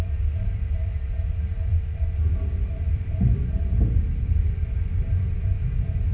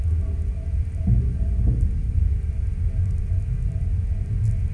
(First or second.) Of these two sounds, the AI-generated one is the first